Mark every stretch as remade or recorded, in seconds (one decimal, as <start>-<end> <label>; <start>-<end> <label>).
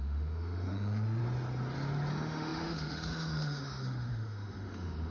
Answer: 0.0-1.2 remade; 1.2-2.1 recorded; 2.1-5.1 remade